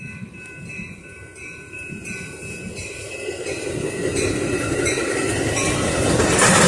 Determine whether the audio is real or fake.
fake